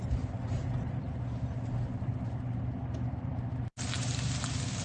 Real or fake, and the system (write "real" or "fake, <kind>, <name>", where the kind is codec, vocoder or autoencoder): real